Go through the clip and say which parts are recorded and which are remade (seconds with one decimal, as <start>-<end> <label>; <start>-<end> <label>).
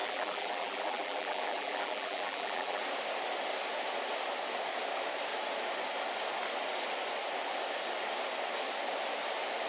0.0-2.8 remade; 2.8-9.7 recorded